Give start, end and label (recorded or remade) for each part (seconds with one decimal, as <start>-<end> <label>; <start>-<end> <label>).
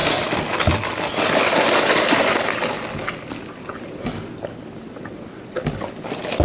0.0-6.4 recorded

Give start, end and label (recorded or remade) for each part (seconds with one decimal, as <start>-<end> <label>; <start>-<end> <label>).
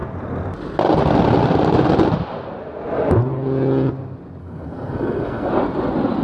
0.0-4.4 recorded; 4.4-5.5 remade; 5.5-6.2 recorded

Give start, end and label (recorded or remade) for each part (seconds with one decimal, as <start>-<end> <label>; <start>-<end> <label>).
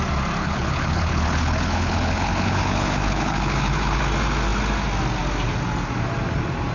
0.0-0.4 recorded; 0.4-4.0 remade; 4.0-6.7 recorded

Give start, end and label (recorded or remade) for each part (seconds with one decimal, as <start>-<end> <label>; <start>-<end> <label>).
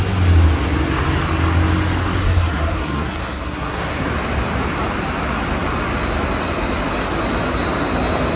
0.0-2.2 recorded; 2.2-4.1 remade; 4.1-8.4 recorded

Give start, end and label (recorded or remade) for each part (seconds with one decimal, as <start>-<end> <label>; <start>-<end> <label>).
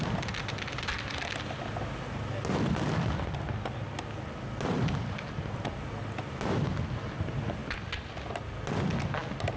0.0-9.6 recorded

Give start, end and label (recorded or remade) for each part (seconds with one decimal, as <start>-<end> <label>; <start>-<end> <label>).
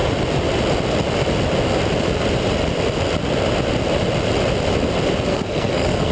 0.0-5.3 recorded; 5.3-6.1 remade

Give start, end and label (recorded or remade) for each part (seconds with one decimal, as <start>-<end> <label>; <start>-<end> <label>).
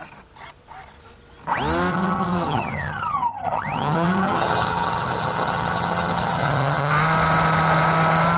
0.0-1.9 recorded; 1.9-6.9 remade; 6.9-8.4 recorded